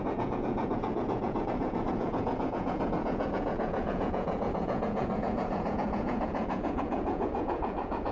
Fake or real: fake